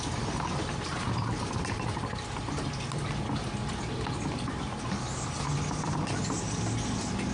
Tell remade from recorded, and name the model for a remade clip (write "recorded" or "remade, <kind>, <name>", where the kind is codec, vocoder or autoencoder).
recorded